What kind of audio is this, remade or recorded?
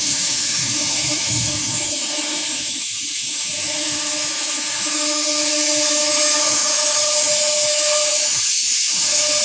remade